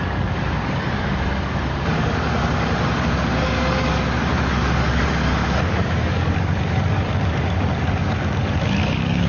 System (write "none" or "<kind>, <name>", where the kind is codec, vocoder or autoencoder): codec, DAC